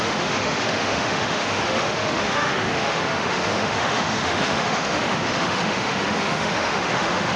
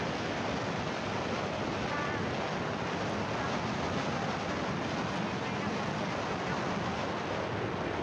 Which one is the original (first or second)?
second